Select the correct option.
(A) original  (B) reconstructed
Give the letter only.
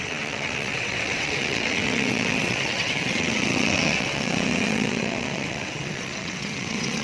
B